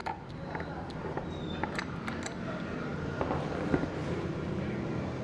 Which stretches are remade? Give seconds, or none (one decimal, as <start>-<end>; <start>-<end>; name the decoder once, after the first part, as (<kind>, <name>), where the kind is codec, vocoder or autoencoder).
0.0-1.8 (vocoder, BigVGAN v2); 2.9-4.7